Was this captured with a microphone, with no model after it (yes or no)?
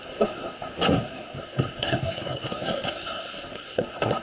no